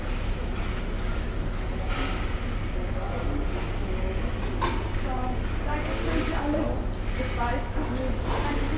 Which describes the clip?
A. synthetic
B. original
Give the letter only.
B